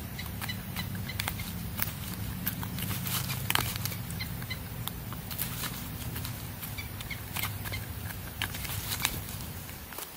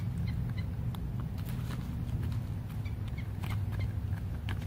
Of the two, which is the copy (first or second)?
first